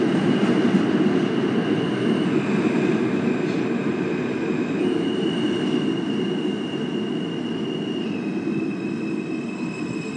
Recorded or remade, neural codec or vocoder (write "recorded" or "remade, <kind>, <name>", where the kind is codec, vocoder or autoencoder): recorded